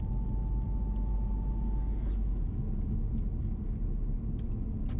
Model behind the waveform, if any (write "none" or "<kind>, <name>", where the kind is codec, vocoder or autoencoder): none